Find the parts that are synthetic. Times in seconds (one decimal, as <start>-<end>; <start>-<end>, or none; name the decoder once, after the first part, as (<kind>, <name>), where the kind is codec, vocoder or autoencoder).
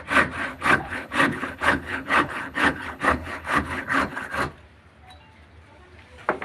0.5-4.3 (codec, HILCodec)